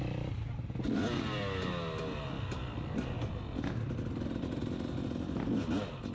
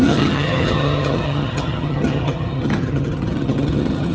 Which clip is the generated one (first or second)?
second